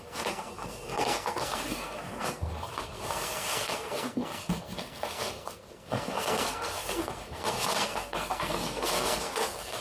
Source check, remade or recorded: remade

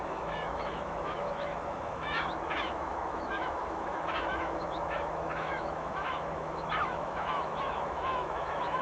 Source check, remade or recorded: remade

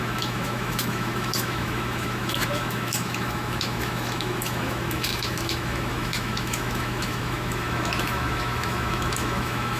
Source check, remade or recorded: remade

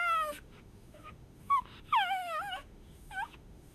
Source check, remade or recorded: remade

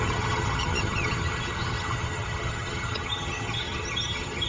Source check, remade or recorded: remade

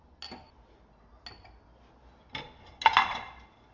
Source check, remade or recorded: recorded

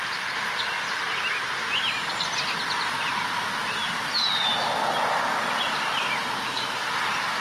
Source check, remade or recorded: recorded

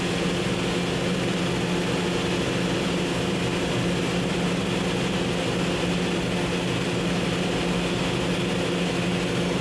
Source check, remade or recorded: recorded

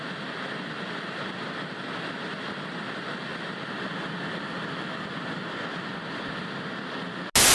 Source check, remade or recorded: recorded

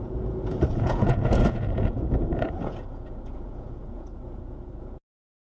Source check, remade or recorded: remade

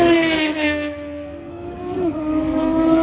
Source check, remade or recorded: remade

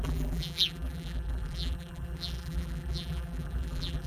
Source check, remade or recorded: remade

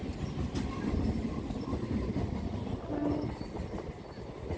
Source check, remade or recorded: recorded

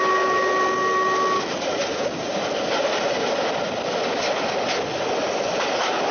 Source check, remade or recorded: recorded